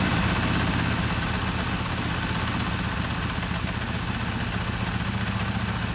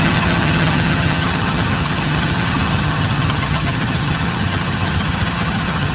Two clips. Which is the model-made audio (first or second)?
second